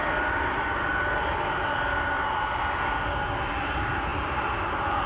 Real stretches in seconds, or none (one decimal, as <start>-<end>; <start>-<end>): 0.0-5.1